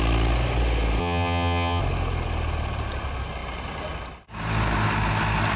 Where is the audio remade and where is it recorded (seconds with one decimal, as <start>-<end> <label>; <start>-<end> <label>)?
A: 0.0-1.0 recorded; 1.0-1.8 remade; 1.8-5.6 recorded